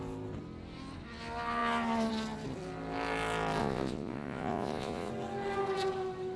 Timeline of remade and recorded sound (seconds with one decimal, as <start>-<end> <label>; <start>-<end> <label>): 0.0-3.6 recorded; 3.6-5.1 remade; 5.1-6.4 recorded